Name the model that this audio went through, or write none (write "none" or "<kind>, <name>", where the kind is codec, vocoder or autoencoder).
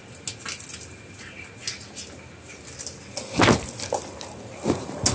none